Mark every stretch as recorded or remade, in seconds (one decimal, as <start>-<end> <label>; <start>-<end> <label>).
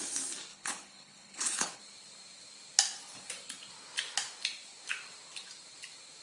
0.0-0.5 recorded; 0.5-1.8 remade; 1.8-6.2 recorded